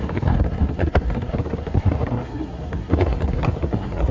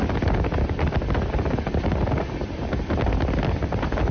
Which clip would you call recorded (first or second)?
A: second